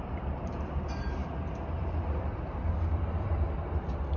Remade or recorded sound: remade